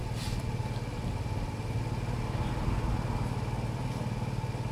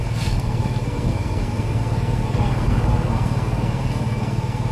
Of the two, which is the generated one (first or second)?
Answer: second